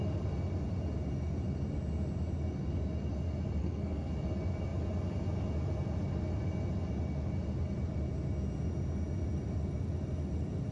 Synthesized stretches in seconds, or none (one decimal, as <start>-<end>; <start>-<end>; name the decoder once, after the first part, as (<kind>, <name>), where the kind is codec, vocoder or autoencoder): 3.6-4.1 (codec, SNAC)